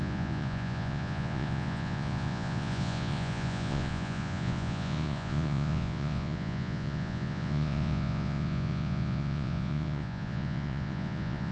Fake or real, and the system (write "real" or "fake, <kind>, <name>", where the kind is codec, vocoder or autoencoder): fake, vocoder, Vocos